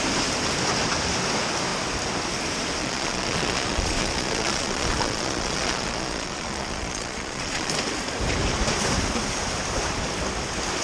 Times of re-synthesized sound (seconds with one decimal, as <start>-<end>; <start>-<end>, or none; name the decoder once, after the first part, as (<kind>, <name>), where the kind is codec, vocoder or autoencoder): 2.8-7.7 (vocoder, Vocos)